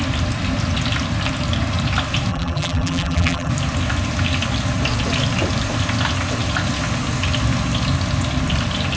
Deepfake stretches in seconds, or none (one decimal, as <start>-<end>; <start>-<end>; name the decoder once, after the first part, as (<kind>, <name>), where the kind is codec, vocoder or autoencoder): 2.3-3.5 (vocoder, BigVGAN v2)